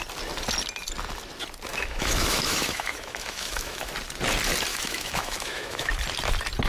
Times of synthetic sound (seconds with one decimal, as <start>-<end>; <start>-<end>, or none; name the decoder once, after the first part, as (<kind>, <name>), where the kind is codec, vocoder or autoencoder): 1.7-3.9 (autoencoder, DAC-VAE); 4.7-5.9